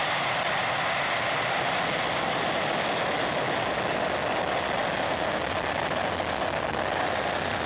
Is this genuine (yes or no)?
yes